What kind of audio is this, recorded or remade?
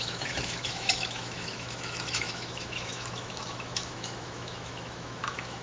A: remade